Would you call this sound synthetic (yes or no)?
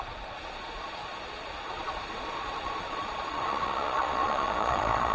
yes